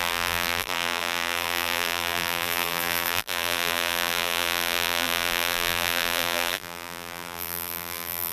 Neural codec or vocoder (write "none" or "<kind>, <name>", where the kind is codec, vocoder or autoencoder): vocoder, BigVGAN v2